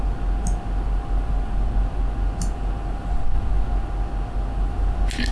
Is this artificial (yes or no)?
no